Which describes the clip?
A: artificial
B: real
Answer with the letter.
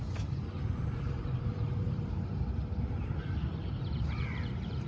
A